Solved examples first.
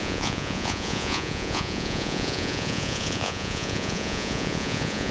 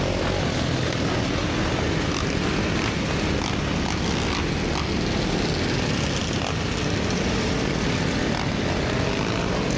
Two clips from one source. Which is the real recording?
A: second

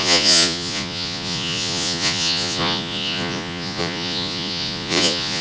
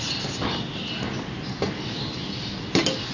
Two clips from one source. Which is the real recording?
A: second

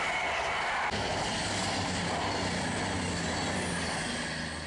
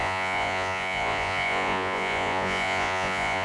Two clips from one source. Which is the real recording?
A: first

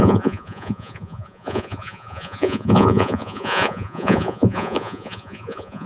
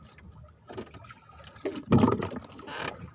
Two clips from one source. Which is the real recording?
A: second